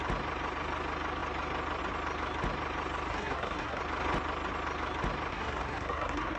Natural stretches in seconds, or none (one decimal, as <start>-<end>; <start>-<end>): 0.0-3.1; 3.8-5.3